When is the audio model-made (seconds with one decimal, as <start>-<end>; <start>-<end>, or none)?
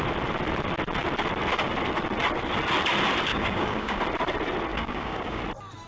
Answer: 3.3-4.0; 4.7-5.4